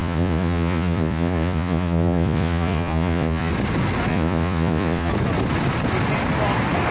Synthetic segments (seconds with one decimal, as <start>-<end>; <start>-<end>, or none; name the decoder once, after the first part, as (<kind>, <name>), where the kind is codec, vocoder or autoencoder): 0.0-3.5 (vocoder, Vocos); 4.1-5.1